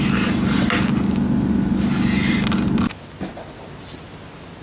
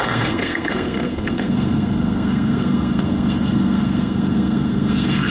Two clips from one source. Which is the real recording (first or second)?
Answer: first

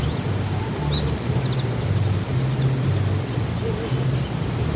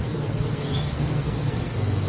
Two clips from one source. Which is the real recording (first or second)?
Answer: first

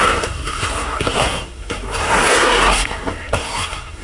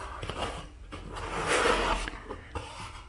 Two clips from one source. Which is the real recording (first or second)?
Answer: second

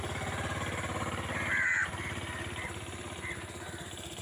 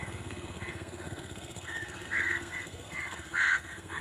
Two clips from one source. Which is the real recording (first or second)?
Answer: first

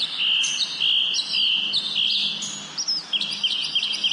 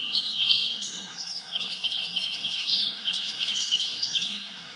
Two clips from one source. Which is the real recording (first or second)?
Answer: first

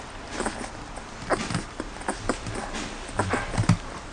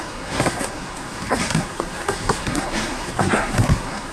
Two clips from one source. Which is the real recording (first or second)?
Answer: first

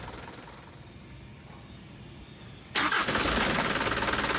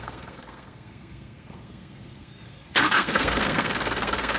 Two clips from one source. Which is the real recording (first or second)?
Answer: first